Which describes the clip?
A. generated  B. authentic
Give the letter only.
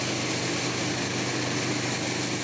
B